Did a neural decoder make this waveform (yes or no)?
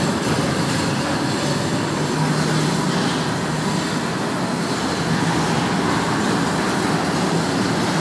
no